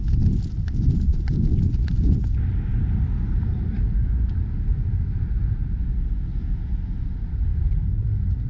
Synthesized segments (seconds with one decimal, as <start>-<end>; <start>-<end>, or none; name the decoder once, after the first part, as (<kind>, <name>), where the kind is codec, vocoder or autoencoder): 6.3-7.1 (vocoder, BigVGAN v2); 7.5-8.1